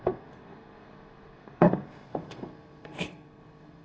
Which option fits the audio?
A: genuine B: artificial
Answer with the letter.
B